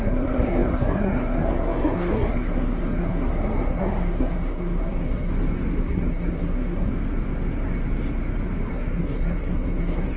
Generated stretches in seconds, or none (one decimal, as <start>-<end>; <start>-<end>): 0.0-5.3; 5.8-6.9; 8.7-10.2